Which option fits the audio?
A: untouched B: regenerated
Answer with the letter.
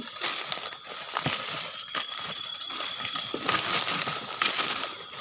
A